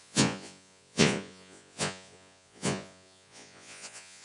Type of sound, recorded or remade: remade